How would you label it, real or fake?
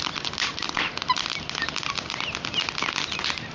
real